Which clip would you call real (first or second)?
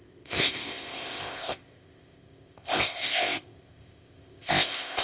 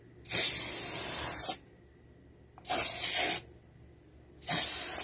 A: second